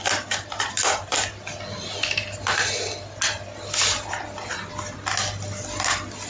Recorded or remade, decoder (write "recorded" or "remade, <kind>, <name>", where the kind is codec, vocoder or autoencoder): recorded